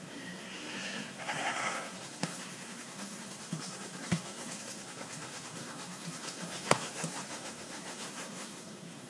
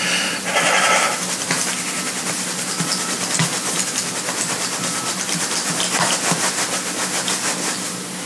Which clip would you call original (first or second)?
second